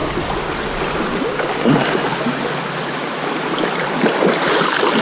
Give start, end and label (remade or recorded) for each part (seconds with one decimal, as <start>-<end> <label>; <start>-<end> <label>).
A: 0.0-5.0 recorded